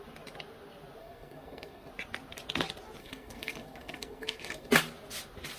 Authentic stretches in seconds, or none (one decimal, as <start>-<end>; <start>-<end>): 0.0-1.0; 1.9-3.0; 4.7-5.6